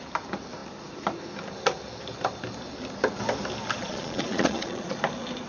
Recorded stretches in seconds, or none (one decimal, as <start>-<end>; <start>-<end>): 0.0-3.8; 5.0-5.5